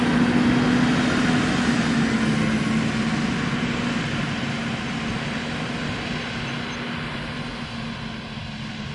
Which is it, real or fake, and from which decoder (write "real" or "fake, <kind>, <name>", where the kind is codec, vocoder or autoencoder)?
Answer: real